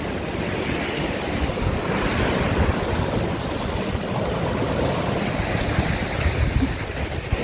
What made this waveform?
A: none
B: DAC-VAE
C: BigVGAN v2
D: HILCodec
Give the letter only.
A